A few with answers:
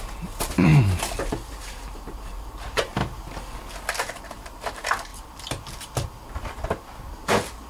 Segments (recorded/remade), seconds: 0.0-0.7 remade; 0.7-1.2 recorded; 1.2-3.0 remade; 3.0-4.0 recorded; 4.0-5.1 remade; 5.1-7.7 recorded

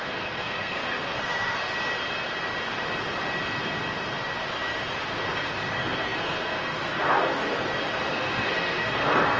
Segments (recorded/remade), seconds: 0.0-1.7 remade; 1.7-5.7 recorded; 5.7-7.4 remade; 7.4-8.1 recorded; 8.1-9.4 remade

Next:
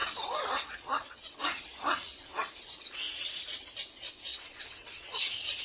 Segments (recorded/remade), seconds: 0.0-3.0 remade; 3.0-4.3 recorded; 4.3-5.6 remade